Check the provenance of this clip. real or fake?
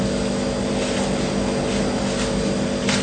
real